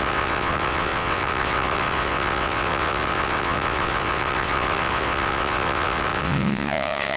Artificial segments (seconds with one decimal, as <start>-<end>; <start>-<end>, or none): 0.0-7.2